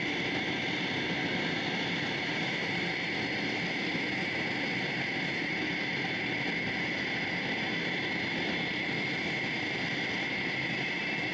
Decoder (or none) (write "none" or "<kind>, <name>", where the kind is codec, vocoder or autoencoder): none